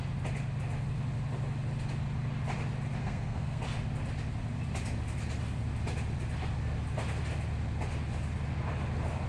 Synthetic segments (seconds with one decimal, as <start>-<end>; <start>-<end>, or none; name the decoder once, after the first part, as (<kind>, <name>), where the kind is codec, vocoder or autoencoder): 3.0-3.6 (codec, SNAC)